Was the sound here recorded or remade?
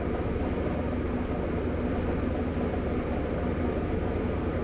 recorded